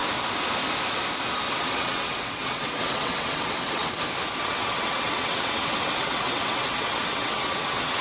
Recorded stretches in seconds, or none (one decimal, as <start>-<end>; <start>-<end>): 0.0-1.5; 3.8-4.4